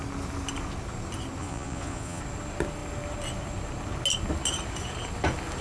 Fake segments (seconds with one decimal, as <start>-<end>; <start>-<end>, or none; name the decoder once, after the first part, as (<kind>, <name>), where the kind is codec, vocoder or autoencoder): 1.4-2.2 (vocoder, Vocos)